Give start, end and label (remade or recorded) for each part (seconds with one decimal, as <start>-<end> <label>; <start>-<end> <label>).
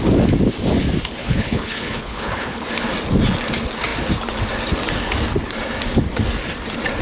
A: 0.0-1.2 recorded; 1.2-2.6 remade; 2.6-7.0 recorded